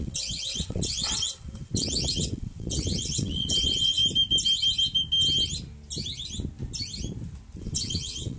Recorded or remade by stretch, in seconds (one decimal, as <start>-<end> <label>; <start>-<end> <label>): 0.0-4.0 remade; 4.0-7.6 recorded; 7.6-8.4 remade